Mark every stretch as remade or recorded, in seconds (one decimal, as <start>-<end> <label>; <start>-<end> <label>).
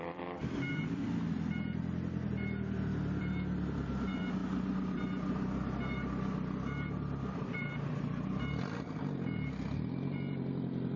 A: 0.0-1.0 remade; 1.0-3.2 recorded; 3.2-11.0 remade